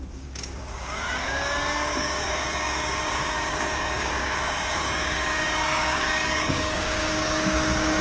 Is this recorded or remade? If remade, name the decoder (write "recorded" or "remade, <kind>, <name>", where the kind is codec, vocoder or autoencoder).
remade, codec, DAC